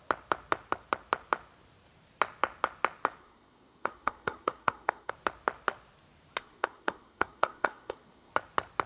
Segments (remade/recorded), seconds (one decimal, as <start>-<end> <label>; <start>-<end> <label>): 0.0-3.2 recorded; 3.2-5.1 remade; 5.1-6.4 recorded; 6.4-8.3 remade; 8.3-8.9 recorded